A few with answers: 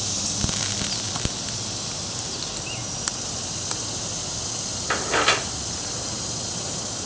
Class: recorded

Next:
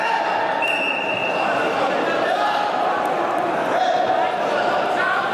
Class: recorded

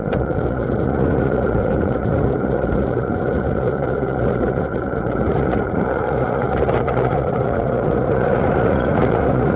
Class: remade